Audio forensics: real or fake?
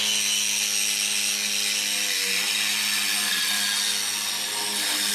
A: real